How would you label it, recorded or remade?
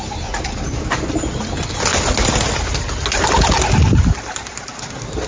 recorded